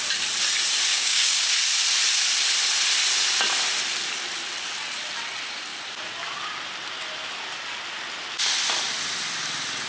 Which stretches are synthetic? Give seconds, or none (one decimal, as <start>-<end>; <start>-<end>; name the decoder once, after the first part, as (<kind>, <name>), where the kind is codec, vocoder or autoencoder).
0.9-1.5 (codec, DAC)